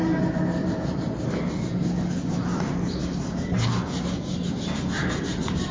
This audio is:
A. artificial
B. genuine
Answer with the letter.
B